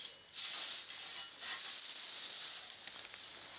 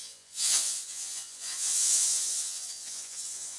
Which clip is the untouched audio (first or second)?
first